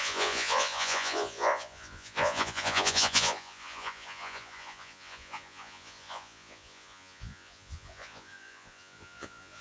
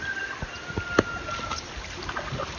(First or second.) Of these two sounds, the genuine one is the second